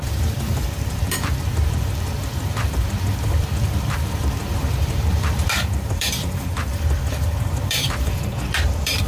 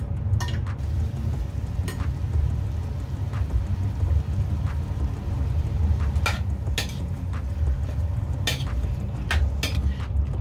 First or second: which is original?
second